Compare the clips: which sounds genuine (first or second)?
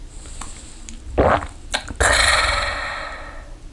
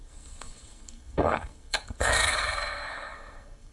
first